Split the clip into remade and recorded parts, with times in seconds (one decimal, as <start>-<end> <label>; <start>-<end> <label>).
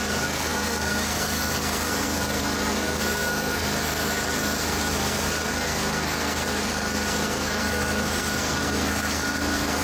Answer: 0.0-9.8 remade